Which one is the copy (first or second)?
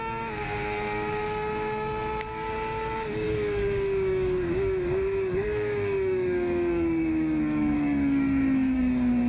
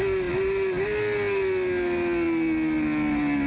first